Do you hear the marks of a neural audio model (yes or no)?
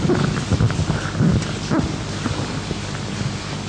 no